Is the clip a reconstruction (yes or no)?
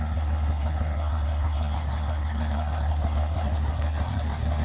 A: yes